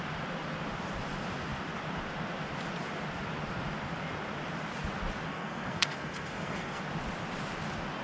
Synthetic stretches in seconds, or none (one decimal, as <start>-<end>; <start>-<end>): 5.3-6.8